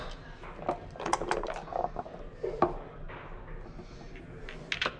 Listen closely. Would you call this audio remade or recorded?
recorded